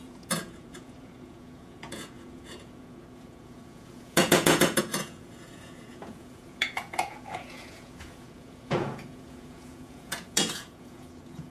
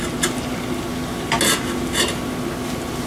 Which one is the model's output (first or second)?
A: first